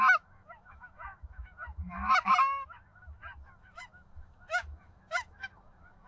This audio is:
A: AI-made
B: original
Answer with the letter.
A